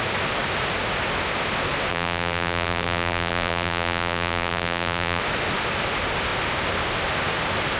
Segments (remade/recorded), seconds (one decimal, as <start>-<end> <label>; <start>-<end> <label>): 0.0-1.9 recorded; 1.9-5.2 remade; 5.2-7.8 recorded